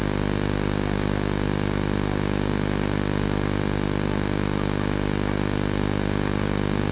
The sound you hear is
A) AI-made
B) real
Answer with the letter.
B